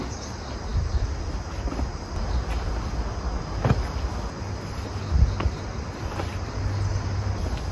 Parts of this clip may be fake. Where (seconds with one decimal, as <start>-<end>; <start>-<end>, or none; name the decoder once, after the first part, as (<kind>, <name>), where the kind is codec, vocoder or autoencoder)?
none